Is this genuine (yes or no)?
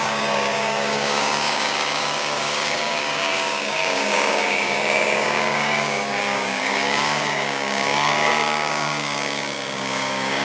no